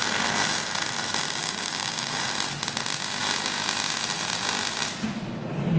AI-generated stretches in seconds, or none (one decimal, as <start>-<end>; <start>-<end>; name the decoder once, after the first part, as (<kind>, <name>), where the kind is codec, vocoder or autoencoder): 1.4-2.2 (codec, DAC)